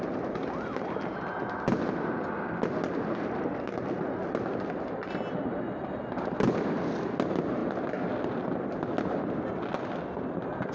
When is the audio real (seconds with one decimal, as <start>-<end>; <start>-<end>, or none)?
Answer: 0.0-10.7